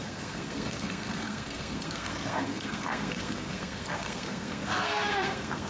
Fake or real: fake